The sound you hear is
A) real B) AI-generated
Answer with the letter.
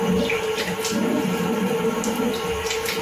A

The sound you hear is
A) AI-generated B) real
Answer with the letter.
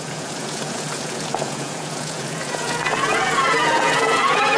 A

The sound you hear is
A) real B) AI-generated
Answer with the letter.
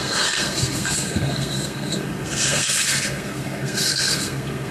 B